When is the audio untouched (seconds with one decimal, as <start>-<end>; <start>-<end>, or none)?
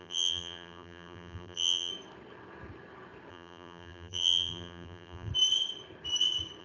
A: 1.9-3.3; 5.3-6.6